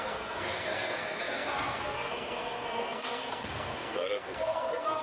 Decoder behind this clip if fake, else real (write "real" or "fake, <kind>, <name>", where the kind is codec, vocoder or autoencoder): fake, codec, SNAC